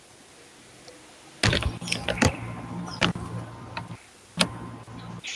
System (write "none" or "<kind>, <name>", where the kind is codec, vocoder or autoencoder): none